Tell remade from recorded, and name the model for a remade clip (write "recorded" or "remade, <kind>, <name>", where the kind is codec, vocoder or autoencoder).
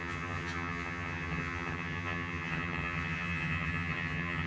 remade, vocoder, HiFi-GAN